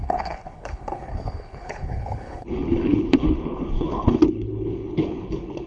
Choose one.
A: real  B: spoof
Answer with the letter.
B